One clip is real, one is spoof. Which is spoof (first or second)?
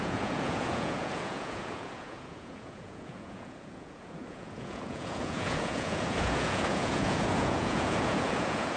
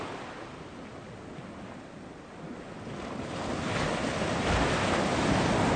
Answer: first